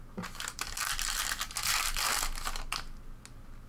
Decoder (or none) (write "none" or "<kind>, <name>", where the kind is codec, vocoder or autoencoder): none